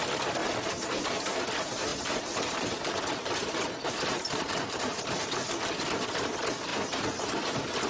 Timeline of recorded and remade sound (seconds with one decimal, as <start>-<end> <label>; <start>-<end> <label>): 0.0-0.4 recorded; 0.4-1.5 remade; 1.5-1.9 recorded; 1.9-5.2 remade; 5.2-6.7 recorded; 6.7-7.4 remade; 7.4-7.9 recorded